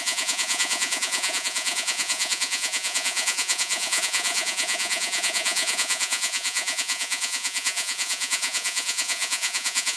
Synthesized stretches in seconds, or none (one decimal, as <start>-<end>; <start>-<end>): 0.0-10.0